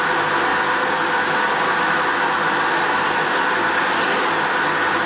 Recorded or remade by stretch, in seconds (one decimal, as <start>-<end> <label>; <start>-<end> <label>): 0.0-5.1 recorded